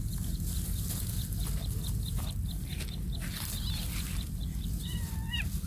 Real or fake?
real